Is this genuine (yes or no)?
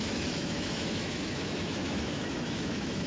no